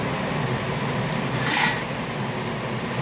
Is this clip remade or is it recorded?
recorded